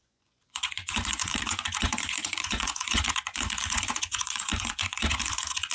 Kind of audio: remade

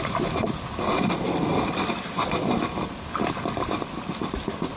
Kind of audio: recorded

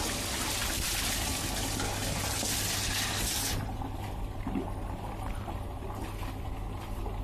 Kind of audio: recorded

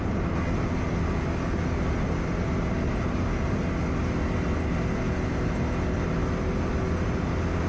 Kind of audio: recorded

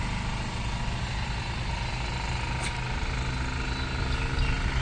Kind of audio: recorded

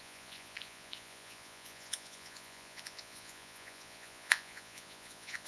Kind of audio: remade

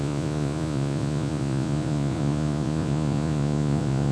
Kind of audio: remade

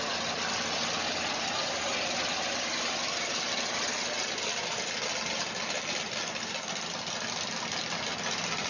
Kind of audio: recorded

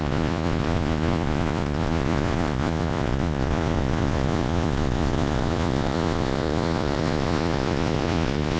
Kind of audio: remade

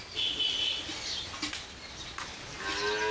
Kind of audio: recorded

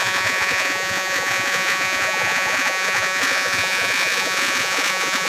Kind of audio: remade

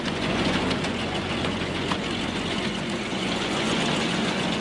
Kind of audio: remade